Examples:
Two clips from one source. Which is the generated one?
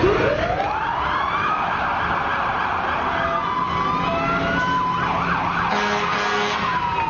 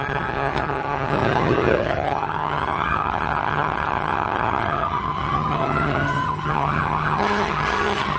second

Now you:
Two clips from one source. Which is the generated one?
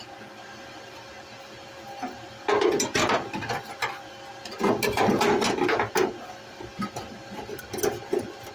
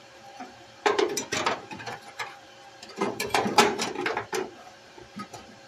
second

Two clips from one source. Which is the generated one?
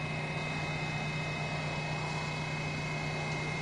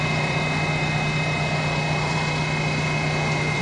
second